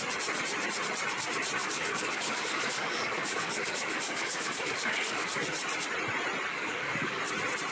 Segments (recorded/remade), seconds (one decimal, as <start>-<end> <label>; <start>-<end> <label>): 0.0-1.6 recorded; 1.6-5.3 remade; 5.3-6.5 recorded; 6.5-7.2 remade; 7.2-7.7 recorded